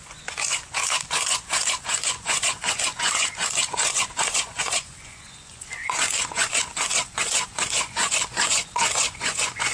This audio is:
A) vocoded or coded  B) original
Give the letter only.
A